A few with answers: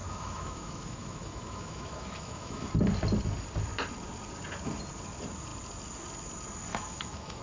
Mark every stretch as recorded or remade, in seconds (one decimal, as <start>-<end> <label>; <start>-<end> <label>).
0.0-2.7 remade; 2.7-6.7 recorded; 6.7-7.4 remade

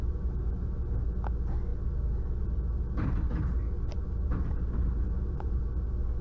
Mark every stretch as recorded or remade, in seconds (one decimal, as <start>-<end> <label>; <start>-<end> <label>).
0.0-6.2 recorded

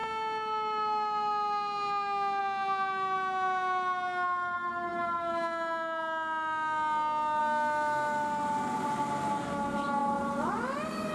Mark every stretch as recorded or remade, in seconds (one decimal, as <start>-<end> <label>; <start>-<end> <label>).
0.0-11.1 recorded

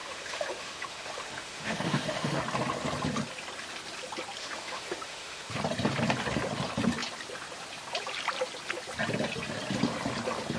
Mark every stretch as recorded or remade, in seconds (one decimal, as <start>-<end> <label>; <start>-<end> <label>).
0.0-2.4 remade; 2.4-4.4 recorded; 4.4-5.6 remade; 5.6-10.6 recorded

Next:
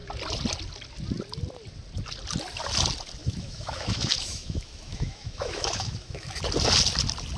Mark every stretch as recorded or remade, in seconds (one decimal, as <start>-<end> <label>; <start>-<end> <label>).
0.0-3.2 recorded; 3.2-6.4 remade; 6.4-7.4 recorded

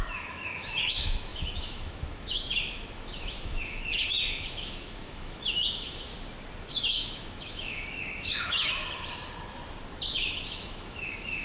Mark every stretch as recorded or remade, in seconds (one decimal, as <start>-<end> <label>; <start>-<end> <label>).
0.0-6.1 remade; 6.1-6.7 recorded; 6.7-8.8 remade; 8.8-10.1 recorded; 10.1-11.4 remade